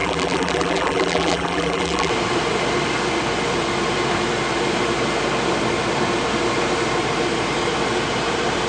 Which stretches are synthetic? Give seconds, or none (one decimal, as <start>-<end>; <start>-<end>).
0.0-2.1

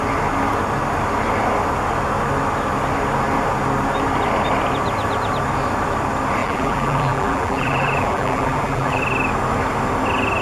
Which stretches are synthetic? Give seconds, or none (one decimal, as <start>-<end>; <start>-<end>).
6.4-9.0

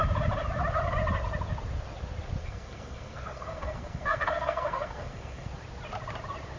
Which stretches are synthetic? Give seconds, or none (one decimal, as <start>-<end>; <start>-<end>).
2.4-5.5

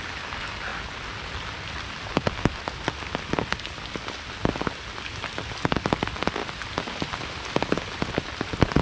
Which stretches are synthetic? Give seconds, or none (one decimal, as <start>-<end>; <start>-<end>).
none

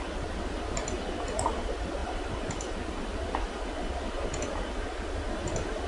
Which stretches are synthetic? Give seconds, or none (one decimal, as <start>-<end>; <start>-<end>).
none

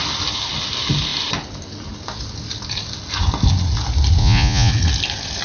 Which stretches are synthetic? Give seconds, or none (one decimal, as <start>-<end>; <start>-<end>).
4.2-4.7

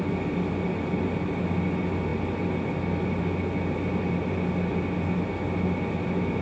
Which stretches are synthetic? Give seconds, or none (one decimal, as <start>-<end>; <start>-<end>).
none

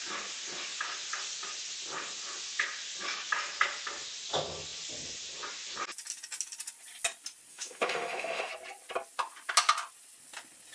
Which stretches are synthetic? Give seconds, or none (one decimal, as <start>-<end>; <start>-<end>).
7.5-8.5